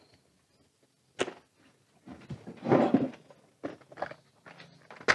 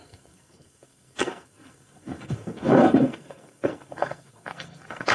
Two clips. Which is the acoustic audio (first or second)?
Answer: first